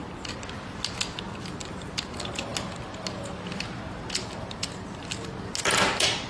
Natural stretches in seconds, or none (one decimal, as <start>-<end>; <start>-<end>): 0.0-6.3